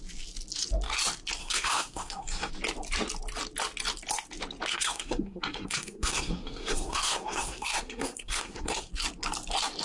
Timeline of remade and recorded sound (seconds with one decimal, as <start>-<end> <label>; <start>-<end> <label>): 0.0-1.4 recorded; 1.4-2.5 remade; 2.5-4.7 recorded; 4.7-8.9 remade; 8.9-9.8 recorded